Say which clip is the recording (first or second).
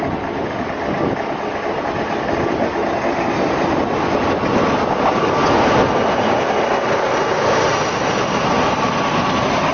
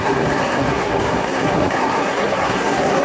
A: first